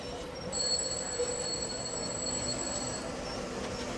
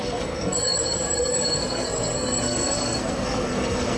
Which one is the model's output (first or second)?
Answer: second